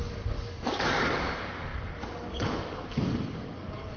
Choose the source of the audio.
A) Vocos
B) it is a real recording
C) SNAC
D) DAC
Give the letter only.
D